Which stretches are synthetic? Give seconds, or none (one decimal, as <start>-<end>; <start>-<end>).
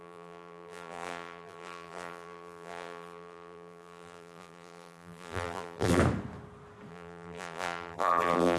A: 0.0-6.0; 6.9-8.6